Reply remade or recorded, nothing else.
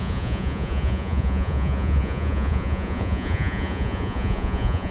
remade